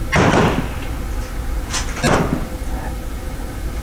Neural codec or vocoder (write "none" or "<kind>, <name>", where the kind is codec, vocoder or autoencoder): none